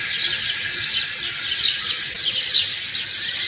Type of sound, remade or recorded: recorded